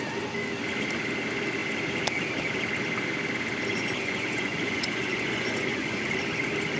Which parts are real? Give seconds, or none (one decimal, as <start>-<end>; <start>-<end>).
0.0-3.7; 6.1-6.8